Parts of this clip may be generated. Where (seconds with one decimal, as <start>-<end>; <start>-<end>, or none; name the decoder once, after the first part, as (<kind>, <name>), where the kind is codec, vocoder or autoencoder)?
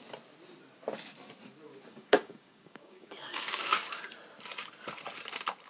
1.9-4.1 (codec, DAC)